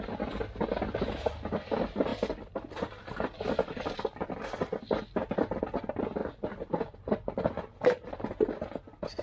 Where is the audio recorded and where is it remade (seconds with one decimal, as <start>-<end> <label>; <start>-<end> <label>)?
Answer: 0.0-2.1 recorded; 2.1-4.3 remade; 4.3-6.2 recorded; 6.2-7.3 remade; 7.3-9.2 recorded